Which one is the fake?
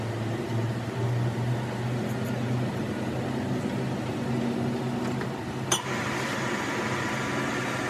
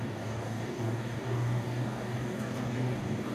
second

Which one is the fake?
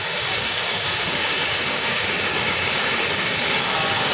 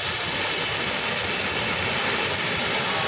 first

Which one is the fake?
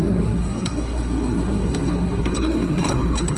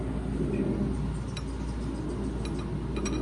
first